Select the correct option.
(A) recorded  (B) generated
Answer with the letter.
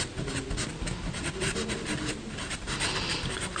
A